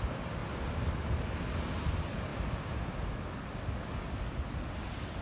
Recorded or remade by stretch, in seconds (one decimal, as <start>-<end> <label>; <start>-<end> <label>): 0.0-5.2 recorded